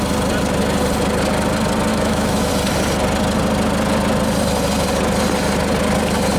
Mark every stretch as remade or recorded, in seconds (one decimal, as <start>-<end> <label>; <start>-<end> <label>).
0.0-1.9 recorded; 1.9-2.5 remade; 2.5-6.4 recorded